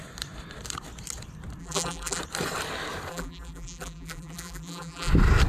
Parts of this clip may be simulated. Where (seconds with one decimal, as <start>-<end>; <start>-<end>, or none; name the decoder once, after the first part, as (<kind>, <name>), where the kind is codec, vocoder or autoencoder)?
1.6-2.2 (vocoder, BigVGAN v2); 3.1-5.1